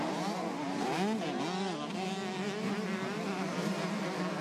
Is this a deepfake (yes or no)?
no